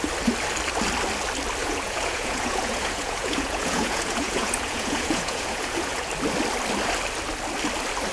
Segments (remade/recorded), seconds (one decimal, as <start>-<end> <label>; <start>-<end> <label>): 0.0-1.6 recorded; 1.6-6.1 remade; 6.1-8.1 recorded